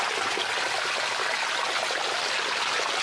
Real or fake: real